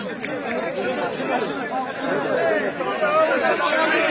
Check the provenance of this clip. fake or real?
real